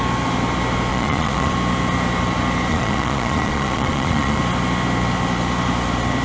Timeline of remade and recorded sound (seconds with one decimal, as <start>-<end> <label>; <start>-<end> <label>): 0.0-0.9 recorded; 0.9-1.5 remade; 1.5-2.7 recorded; 2.7-4.4 remade; 4.4-6.2 recorded